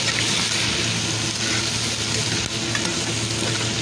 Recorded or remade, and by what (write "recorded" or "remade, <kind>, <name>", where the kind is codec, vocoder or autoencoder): recorded